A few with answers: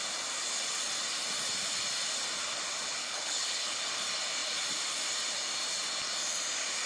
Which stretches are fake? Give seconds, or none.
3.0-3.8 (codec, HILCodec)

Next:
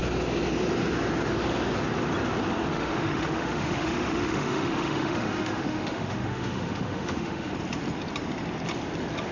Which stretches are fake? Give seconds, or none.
2.7-7.5 (autoencoder, DAC-VAE)

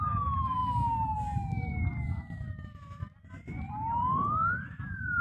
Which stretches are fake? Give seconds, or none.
0.0-0.6 (vocoder, BigVGAN v2); 3.7-5.2

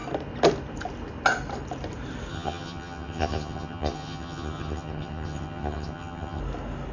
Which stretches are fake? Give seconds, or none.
2.3-6.4 (vocoder, HiFi-GAN)

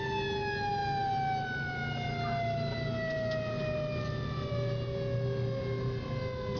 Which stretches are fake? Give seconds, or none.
none

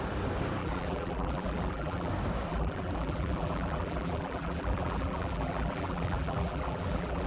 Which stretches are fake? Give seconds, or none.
0.6-2.1 (vocoder, BigVGAN v2); 2.5-7.3

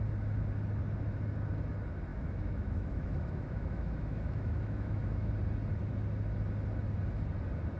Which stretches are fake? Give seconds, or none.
2.1-5.3 (autoencoder, DAC-VAE)

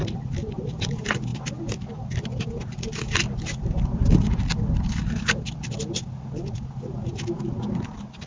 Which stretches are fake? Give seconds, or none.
none